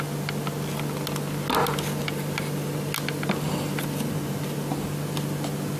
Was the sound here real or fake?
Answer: real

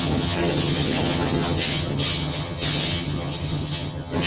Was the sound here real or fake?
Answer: fake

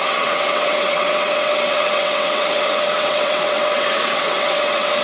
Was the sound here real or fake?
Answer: fake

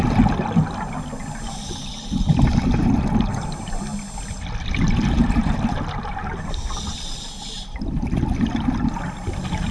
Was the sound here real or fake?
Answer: real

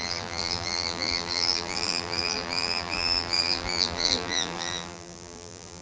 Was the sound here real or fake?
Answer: fake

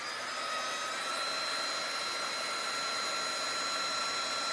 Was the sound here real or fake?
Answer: real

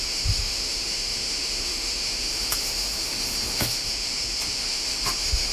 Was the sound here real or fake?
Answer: fake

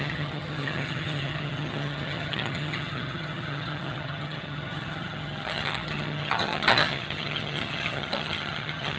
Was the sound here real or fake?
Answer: fake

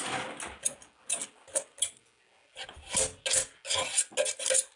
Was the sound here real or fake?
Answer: real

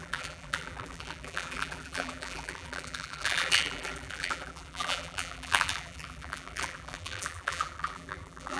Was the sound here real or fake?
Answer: fake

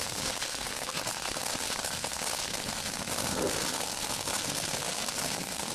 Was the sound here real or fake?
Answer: fake